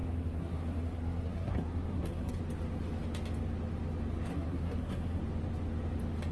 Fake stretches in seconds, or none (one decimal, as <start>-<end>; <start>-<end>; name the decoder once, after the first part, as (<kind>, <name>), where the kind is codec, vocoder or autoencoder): 0.0-2.4 (codec, SNAC); 4.3-5.2